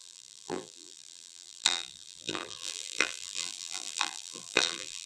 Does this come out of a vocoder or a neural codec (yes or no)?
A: yes